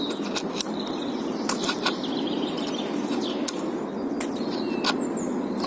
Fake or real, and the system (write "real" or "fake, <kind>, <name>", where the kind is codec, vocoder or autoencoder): real